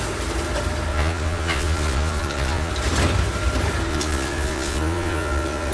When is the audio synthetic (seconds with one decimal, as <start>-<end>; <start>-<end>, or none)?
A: 0.9-2.7; 3.9-5.7